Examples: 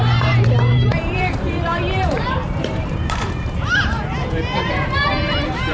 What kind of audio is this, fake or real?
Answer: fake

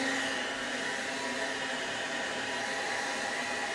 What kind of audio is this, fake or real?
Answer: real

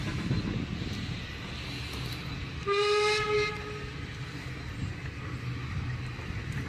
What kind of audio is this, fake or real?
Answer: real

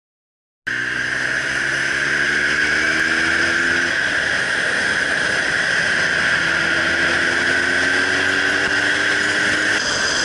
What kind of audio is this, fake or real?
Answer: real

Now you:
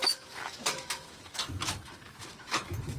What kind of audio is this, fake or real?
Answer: fake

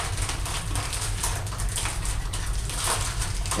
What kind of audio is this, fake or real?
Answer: real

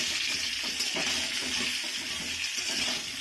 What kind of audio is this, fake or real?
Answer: real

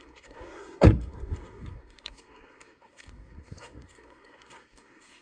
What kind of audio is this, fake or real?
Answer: fake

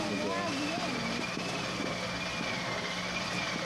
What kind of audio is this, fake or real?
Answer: real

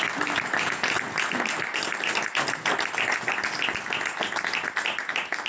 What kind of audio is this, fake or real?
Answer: real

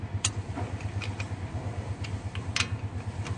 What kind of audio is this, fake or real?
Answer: real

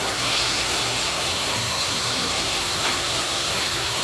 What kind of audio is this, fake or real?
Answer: fake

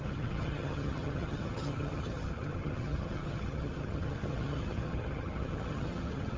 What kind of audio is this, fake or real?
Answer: fake